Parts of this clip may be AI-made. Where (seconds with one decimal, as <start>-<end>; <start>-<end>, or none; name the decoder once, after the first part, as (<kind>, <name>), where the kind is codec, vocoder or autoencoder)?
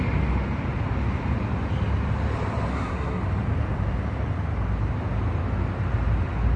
2.7-3.2 (codec, SNAC)